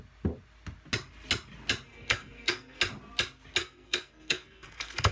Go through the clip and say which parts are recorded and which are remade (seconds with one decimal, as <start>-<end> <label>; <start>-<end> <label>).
0.0-1.9 recorded; 1.9-2.8 remade; 2.8-3.6 recorded; 3.6-5.1 remade